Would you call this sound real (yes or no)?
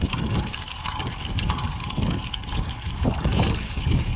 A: no